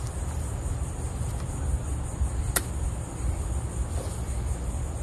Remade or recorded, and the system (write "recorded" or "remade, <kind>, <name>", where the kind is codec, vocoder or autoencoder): recorded